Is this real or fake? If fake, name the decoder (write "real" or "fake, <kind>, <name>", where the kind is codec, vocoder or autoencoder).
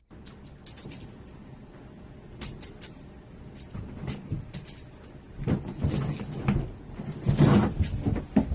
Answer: real